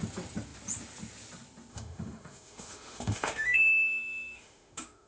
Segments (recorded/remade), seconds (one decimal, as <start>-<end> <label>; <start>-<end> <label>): 0.0-1.7 recorded; 1.7-5.1 remade